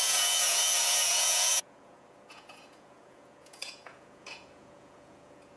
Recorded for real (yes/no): no